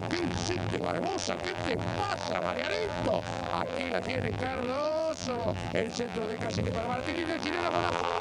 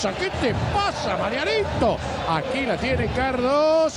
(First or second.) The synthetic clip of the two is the first